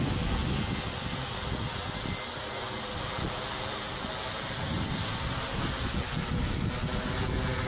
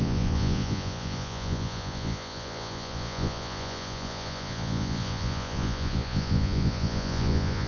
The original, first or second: first